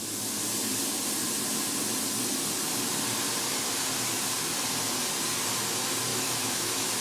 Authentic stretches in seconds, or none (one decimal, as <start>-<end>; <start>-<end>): 0.0-6.1